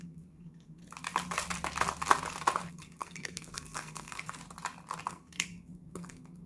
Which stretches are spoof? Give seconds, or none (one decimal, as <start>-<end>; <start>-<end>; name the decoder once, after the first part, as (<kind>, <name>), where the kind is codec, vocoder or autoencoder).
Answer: 0.0-0.8 (codec, SNAC); 2.7-4.4; 5.1-6.5

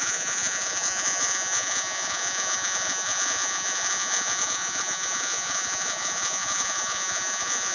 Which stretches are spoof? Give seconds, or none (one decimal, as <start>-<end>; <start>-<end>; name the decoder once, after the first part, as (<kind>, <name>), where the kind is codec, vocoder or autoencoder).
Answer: 0.0-7.7 (vocoder, Vocos)

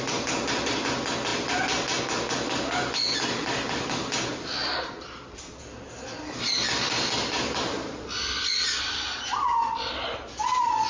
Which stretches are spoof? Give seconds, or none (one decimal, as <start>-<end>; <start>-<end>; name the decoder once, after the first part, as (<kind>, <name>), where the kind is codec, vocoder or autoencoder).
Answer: none

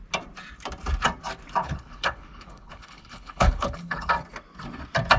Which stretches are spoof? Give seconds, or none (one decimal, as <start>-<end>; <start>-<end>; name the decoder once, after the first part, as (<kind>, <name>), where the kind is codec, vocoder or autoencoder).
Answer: 1.6-4.1 (codec, HILCodec)

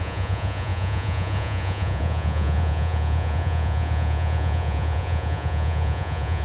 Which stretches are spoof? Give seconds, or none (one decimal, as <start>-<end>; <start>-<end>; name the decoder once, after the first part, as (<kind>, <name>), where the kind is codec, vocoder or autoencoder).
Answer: 0.0-6.4 (vocoder, Vocos)

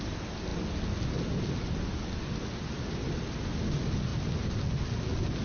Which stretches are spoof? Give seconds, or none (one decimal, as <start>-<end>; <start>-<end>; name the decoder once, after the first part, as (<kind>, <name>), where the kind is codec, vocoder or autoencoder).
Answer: none

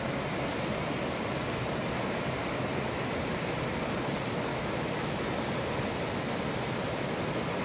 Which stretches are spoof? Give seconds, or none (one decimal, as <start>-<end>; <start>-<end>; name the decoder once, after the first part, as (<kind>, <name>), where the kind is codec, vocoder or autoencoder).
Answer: 4.5-5.3 (autoencoder, DAC-VAE)

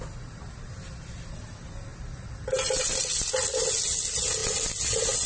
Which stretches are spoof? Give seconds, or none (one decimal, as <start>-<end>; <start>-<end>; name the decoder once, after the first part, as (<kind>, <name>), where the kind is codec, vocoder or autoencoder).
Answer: none